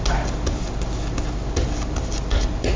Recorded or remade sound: recorded